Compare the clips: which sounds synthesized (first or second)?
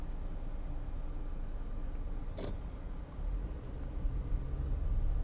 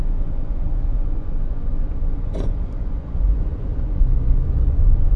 second